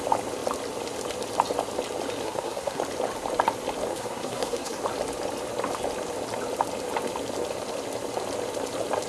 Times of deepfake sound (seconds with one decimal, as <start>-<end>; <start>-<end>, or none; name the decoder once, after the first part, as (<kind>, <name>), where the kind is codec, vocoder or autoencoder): 2.2-2.8 (codec, SNAC); 3.9-4.8